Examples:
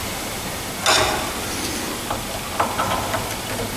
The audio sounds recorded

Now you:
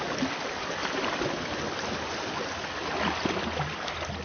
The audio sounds recorded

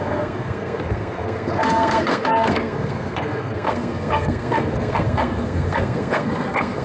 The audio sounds remade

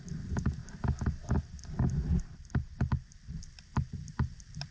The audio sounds recorded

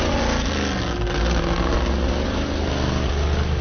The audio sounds recorded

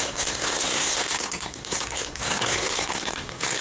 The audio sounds remade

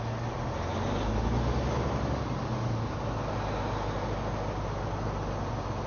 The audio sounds recorded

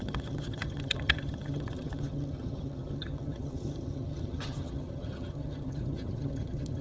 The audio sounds remade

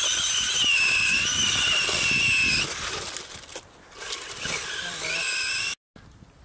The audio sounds recorded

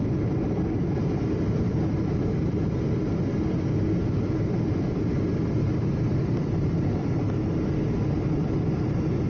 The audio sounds recorded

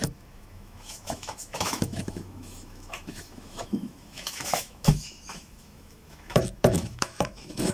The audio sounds remade